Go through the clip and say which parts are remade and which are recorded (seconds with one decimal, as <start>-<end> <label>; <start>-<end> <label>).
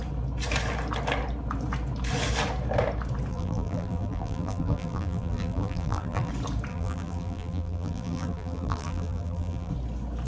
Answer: 0.0-3.3 recorded; 3.3-6.3 remade; 6.3-6.7 recorded; 6.7-9.7 remade; 9.7-10.3 recorded